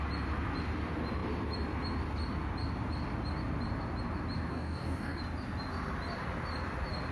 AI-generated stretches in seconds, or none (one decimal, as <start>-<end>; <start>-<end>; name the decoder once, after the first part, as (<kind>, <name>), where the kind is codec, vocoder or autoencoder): 4.5-5.2 (codec, DAC)